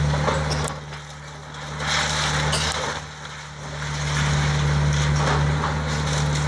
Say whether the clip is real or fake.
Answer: real